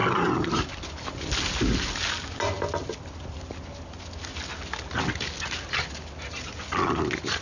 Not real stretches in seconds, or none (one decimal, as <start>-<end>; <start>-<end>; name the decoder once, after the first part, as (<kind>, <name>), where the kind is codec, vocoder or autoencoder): 0.0-0.8 (vocoder, BigVGAN v2)

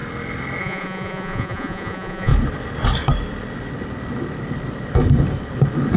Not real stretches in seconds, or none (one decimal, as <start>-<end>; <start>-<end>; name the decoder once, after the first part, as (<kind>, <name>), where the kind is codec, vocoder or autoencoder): 0.6-2.3 (vocoder, Vocos)